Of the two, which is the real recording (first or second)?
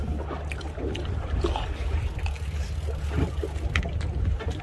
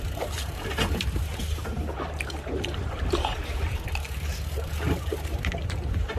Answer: first